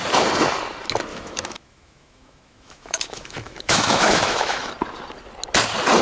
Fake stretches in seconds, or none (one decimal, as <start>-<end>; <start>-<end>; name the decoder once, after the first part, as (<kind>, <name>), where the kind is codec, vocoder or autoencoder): 1.1-4.7 (autoencoder, DAC-VAE)

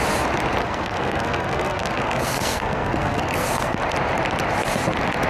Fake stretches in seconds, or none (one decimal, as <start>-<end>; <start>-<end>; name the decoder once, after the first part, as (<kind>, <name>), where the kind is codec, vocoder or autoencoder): 0.6-3.8 (codec, SNAC)

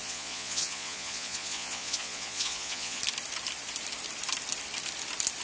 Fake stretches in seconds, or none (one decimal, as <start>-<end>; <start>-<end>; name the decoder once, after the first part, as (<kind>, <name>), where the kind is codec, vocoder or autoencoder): 0.0-3.0 (vocoder, Vocos)

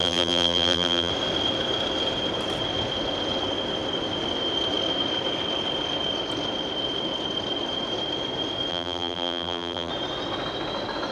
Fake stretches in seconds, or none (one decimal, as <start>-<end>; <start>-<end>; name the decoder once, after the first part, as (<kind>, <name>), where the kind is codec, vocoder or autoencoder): 0.0-1.1 (vocoder, BigVGAN v2); 8.7-9.9

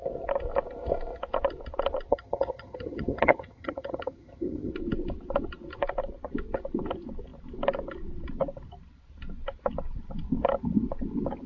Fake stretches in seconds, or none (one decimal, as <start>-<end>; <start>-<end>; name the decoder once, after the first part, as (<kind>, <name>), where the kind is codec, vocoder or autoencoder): 2.1-4.7 (vocoder, HiFi-GAN)

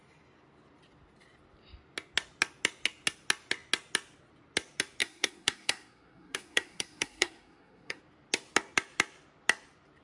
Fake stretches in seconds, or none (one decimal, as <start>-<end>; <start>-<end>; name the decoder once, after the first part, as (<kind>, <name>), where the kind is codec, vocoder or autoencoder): 5.0-8.0 (codec, SNAC)

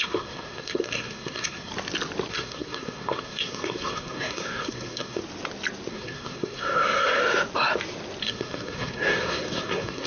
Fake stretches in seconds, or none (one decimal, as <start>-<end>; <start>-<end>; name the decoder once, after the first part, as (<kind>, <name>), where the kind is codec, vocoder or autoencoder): 0.0-1.7 (codec, SNAC); 2.3-5.2; 5.9-7.2; 8.2-10.1

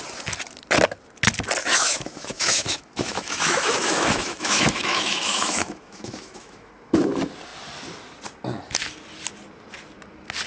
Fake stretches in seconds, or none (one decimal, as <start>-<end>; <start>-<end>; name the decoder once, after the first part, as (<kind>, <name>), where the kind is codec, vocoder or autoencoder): 1.6-6.7 (autoencoder, DAC-VAE)